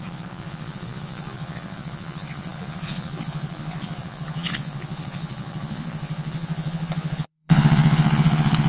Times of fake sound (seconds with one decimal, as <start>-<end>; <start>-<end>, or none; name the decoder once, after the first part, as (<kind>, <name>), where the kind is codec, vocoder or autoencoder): 0.0-8.7 (vocoder, Vocos)